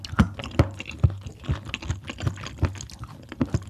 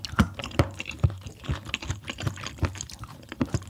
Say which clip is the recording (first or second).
first